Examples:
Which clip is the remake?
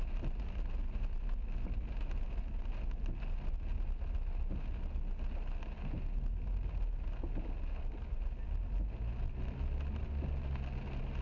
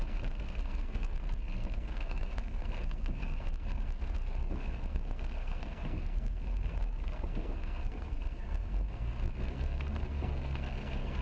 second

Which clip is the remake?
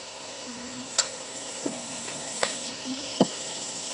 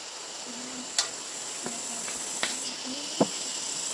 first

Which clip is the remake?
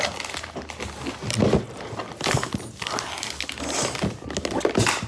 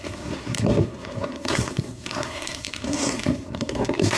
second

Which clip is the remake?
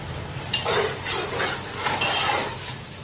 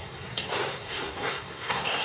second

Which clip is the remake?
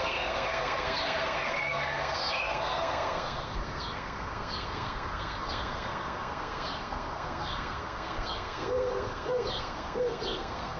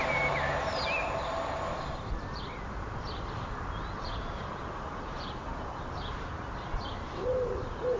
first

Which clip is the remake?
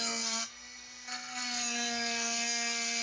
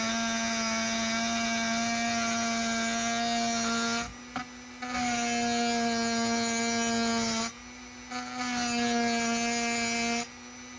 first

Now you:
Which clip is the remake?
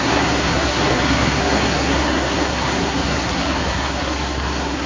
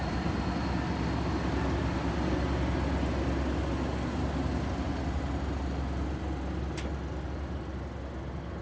first